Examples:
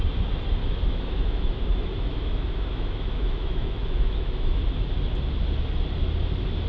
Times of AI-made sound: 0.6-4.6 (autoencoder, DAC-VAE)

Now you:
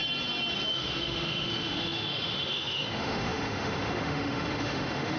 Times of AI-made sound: 0.7-5.2 (autoencoder, DAC-VAE)

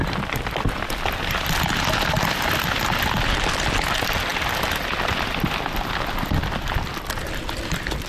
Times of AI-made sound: none

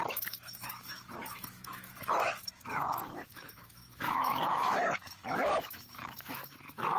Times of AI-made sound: 0.0-7.0 (autoencoder, DAC-VAE)